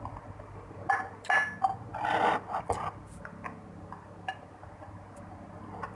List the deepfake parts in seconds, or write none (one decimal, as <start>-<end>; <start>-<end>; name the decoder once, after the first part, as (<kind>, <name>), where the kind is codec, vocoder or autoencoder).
none